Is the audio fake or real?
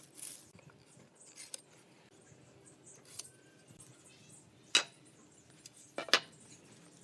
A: real